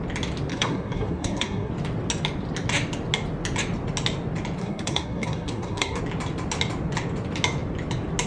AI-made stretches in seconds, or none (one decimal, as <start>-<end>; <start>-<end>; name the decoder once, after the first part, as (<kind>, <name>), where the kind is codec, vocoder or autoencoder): 0.5-1.7 (codec, SNAC); 4.6-6.0